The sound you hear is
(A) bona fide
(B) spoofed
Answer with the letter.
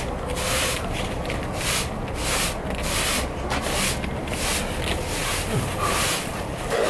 A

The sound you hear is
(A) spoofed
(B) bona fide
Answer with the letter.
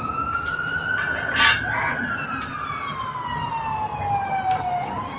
B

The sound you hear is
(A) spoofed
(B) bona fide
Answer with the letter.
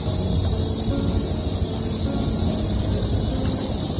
B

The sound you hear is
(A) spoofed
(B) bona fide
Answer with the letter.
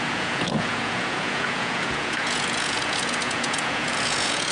A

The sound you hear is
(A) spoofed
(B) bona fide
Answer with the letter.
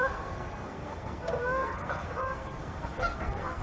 A